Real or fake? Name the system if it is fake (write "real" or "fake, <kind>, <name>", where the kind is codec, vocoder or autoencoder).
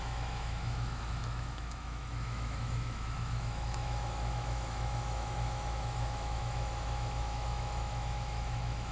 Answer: fake, autoencoder, DAC-VAE